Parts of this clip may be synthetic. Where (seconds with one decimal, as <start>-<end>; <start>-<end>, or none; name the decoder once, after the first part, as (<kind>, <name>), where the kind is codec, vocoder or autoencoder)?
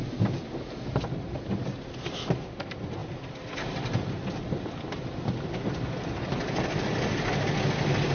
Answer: none